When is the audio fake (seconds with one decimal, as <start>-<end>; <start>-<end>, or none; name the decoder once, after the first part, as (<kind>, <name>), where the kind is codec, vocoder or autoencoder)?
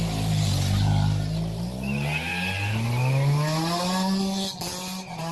none